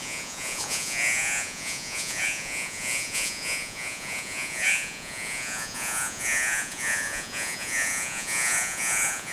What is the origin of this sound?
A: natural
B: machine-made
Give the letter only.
B